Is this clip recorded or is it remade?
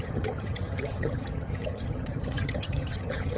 remade